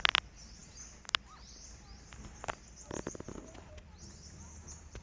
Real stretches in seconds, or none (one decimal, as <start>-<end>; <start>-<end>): 0.0-5.0